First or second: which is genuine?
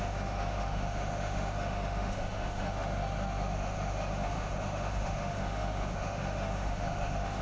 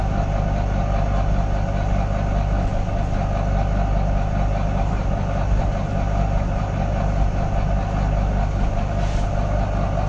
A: second